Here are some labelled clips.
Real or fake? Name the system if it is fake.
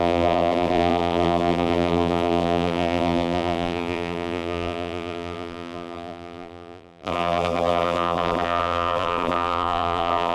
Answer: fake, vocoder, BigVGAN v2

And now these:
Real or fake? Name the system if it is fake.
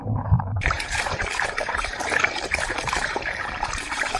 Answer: fake, vocoder, BigVGAN v2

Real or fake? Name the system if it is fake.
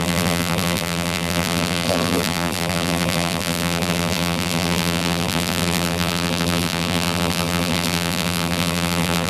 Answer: fake, vocoder, BigVGAN v2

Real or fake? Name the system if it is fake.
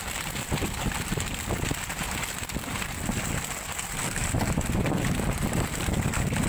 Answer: fake, vocoder, BigVGAN v2